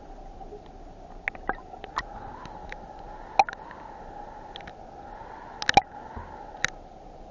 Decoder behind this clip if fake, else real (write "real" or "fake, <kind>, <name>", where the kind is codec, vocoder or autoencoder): real